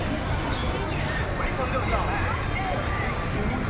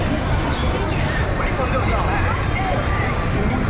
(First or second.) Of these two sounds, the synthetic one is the second